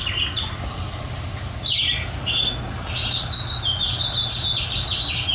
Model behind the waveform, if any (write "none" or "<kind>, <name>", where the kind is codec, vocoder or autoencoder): none